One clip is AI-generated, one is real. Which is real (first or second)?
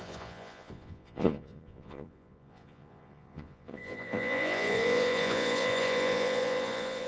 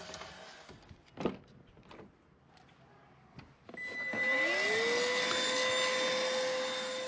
second